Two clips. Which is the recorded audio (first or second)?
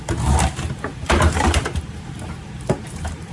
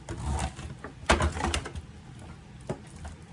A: second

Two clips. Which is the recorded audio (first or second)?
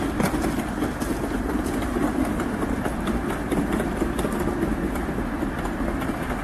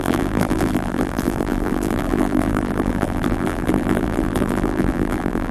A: first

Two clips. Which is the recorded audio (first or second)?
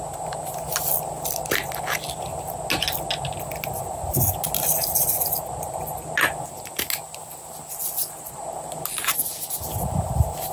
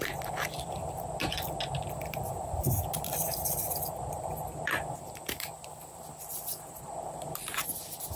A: first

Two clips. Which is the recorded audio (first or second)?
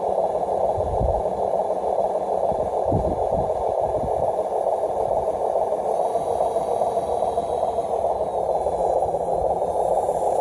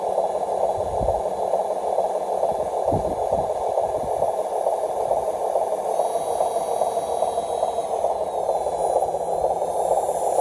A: second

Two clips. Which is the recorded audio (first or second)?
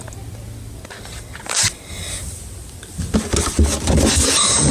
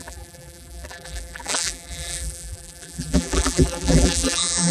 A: first